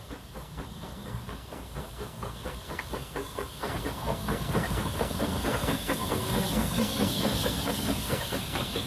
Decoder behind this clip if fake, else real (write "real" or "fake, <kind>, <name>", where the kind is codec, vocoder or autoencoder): fake, codec, SNAC